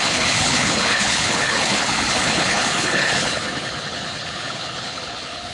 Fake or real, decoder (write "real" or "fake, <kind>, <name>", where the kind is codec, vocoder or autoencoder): fake, codec, HILCodec